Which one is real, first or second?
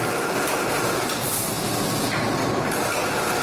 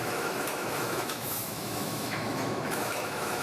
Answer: first